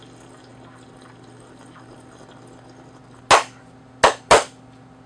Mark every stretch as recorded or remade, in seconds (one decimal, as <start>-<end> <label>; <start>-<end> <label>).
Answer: 0.0-5.1 recorded